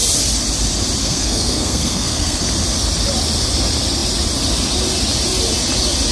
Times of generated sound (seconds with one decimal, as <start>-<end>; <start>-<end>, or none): 1.0-2.4